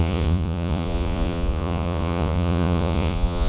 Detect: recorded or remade remade